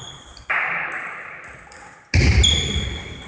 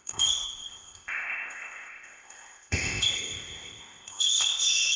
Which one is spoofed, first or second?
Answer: second